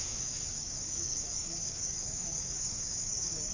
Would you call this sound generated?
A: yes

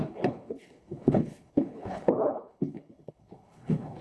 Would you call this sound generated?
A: yes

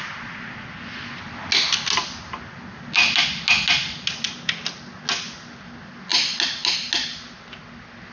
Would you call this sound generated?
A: no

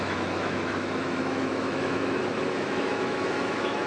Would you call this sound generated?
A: yes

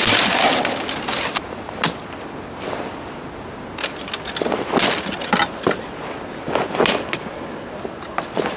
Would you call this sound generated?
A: no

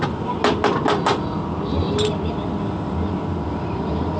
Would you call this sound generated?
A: no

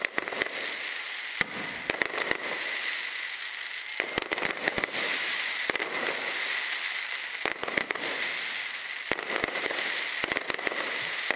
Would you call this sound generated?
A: no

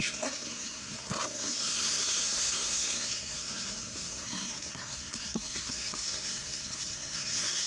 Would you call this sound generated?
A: yes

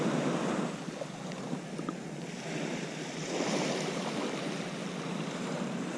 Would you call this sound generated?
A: no